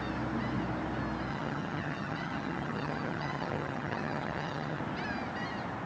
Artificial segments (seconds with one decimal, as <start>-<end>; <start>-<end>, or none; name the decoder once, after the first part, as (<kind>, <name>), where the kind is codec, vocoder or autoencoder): 1.3-4.8 (vocoder, HiFi-GAN)